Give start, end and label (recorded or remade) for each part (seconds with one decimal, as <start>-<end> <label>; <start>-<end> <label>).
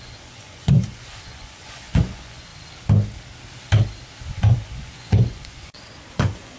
0.0-2.5 remade; 2.5-4.3 recorded; 4.3-6.6 remade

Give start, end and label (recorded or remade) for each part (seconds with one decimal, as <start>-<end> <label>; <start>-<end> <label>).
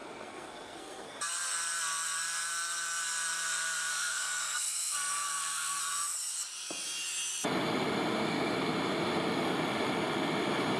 0.0-1.2 remade; 1.2-3.9 recorded; 3.9-5.8 remade; 5.8-10.8 recorded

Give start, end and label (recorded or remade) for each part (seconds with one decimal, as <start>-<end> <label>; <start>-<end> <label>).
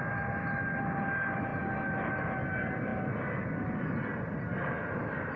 0.0-5.4 recorded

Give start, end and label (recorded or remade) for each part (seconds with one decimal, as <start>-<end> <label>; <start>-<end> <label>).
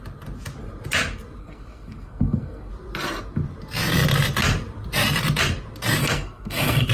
0.0-1.4 recorded; 1.4-2.7 remade; 2.7-6.0 recorded; 6.0-6.9 remade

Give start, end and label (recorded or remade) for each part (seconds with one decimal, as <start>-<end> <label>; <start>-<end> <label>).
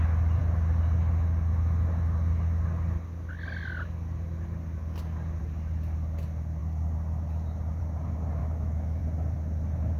0.0-8.4 recorded; 8.4-9.0 remade; 9.0-10.0 recorded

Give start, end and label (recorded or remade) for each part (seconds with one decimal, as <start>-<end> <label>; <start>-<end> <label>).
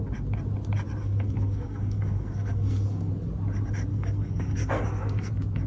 0.0-1.0 recorded; 1.0-3.1 remade; 3.1-3.9 recorded; 3.9-5.3 remade; 5.3-5.7 recorded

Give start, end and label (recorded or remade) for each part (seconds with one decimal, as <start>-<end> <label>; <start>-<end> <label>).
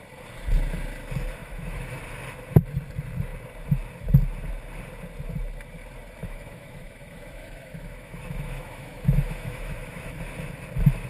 0.0-1.4 recorded; 1.4-2.0 remade; 2.0-6.2 recorded; 6.2-10.2 remade; 10.2-11.1 recorded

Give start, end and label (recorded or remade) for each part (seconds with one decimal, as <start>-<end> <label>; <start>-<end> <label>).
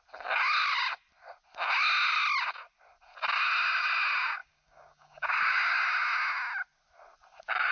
0.0-4.4 recorded; 4.4-5.8 remade; 5.8-7.7 recorded